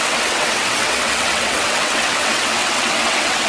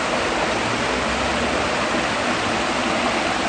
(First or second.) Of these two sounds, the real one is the second